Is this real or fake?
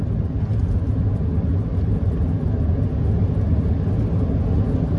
real